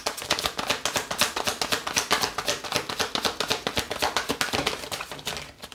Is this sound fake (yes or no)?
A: no